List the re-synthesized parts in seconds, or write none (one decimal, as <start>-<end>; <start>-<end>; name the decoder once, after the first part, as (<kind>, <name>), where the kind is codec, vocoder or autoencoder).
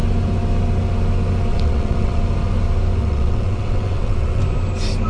1.5-2.2 (vocoder, WaveNeXt); 3.0-4.4